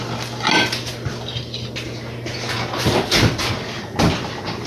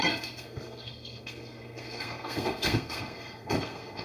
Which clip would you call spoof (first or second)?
second